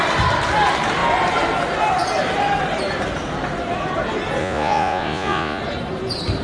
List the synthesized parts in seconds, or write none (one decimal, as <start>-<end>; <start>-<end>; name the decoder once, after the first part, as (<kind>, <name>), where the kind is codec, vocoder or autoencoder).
4.4-5.6 (vocoder, Vocos)